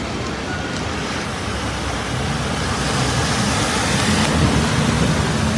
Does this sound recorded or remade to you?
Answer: recorded